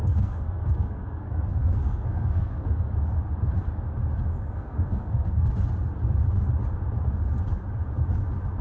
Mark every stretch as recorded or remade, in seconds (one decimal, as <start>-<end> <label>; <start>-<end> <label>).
0.0-2.8 remade; 2.8-4.3 recorded; 4.3-5.5 remade; 5.5-8.6 recorded